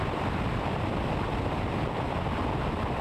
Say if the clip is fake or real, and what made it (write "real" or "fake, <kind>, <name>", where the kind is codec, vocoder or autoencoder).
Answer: real